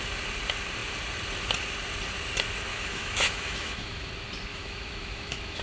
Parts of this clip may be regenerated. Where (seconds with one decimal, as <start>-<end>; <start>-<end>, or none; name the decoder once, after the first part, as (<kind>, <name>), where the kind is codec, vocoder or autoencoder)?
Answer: 2.7-4.1 (autoencoder, DAC-VAE); 4.5-5.6